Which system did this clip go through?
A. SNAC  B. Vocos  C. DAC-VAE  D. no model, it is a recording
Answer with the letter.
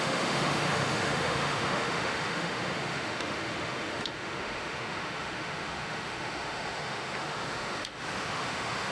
C